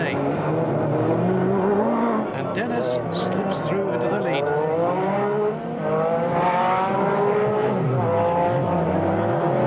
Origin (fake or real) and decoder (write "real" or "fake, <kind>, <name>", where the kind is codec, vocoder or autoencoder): real